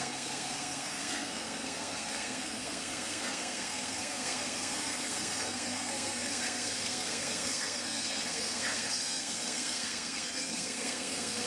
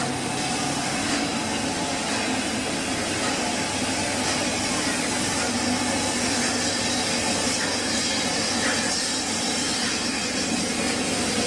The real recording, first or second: second